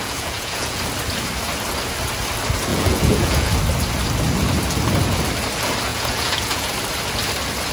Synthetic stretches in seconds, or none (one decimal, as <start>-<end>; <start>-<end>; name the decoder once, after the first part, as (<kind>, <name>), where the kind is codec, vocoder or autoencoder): 0.0-0.8 (vocoder, Vocos); 2.7-3.5; 5.9-6.7